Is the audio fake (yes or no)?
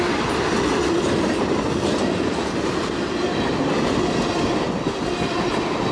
no